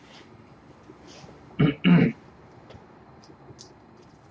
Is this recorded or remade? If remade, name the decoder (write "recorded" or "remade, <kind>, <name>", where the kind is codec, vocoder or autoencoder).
recorded